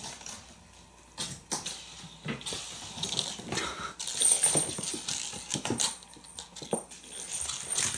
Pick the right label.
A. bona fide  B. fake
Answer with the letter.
A